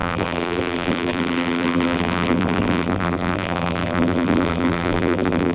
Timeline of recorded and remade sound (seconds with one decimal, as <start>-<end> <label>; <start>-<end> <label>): 0.0-5.5 remade